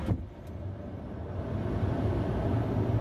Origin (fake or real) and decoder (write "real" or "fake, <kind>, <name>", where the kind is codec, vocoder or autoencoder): real